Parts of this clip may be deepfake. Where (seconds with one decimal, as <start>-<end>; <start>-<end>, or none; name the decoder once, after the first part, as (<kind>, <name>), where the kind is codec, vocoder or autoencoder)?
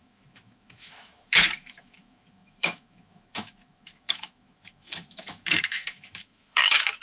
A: 0.0-7.0 (autoencoder, DAC-VAE)